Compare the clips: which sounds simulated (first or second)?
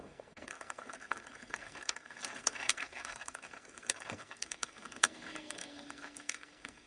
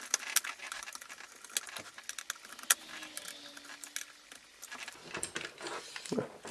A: first